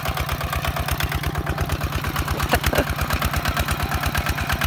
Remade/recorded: recorded